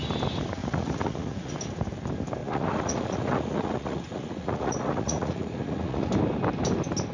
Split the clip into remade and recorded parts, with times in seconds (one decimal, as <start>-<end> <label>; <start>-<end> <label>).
0.0-0.6 recorded; 0.6-1.5 remade; 1.5-2.4 recorded; 2.4-6.1 remade; 6.1-7.1 recorded